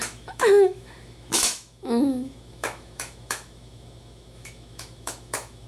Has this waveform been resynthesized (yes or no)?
yes